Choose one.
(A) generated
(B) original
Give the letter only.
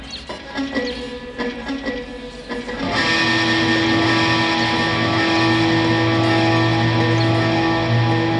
B